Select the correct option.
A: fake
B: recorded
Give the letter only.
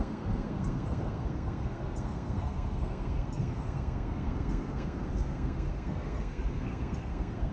A